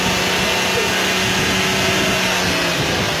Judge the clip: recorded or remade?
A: recorded